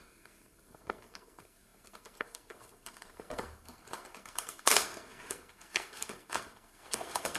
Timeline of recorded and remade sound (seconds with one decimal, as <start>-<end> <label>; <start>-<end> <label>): 0.0-7.4 remade